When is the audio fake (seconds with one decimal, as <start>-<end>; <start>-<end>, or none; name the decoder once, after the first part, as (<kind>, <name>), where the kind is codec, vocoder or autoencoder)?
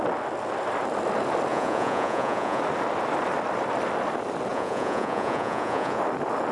1.5-2.6 (vocoder, Vocos); 4.5-6.0